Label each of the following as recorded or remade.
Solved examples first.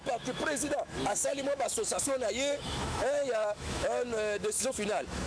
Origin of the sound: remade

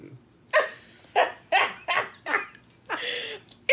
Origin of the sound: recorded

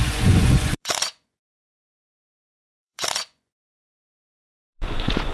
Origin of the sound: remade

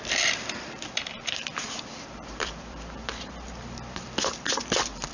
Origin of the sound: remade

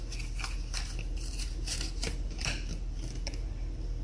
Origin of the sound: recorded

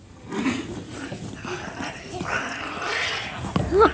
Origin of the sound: recorded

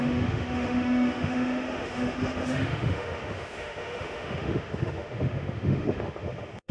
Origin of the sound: remade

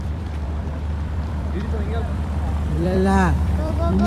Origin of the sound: remade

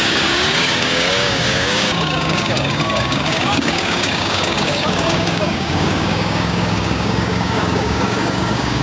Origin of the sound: remade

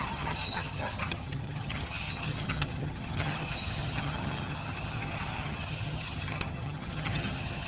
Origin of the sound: remade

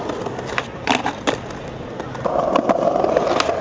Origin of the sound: recorded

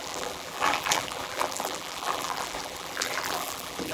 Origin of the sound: remade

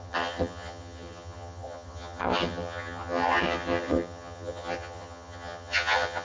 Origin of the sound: remade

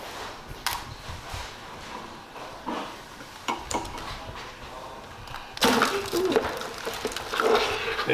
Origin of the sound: recorded